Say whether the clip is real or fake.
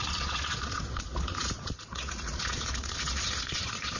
fake